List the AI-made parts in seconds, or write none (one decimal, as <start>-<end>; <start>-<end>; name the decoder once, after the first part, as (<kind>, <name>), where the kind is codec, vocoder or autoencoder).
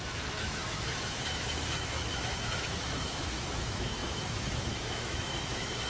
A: 0.0-5.9 (autoencoder, DAC-VAE)